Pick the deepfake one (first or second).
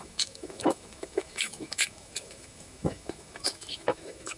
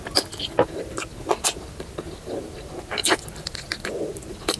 first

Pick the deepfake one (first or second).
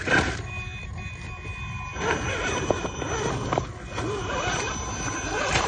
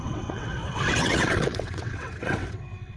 second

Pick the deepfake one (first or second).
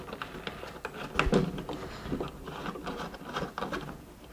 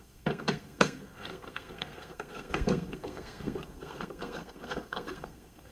second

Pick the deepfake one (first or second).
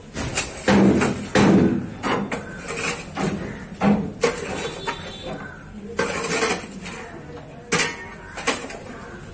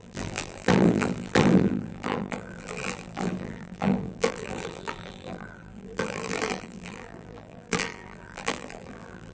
second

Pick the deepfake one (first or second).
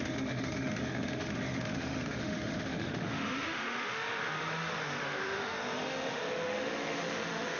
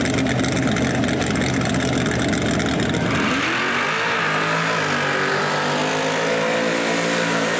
first